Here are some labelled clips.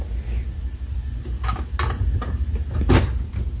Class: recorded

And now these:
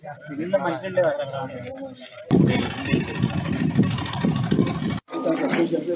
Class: recorded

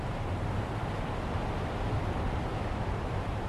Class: recorded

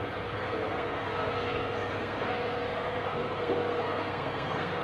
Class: remade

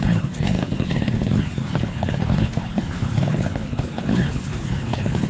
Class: remade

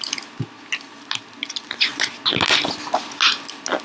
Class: recorded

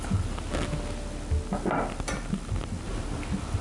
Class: recorded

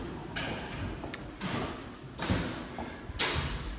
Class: recorded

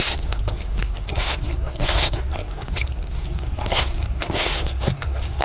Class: remade